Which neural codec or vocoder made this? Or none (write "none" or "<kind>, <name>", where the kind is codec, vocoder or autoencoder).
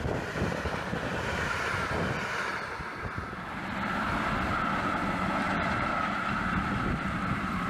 none